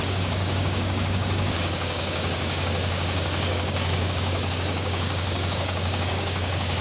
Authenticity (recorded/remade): remade